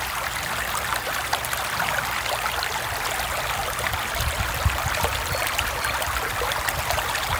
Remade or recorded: recorded